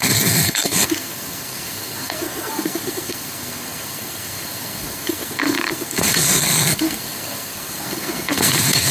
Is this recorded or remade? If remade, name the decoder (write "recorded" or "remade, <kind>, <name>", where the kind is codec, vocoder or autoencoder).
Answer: remade, codec, SNAC